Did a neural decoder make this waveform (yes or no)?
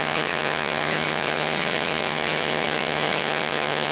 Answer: yes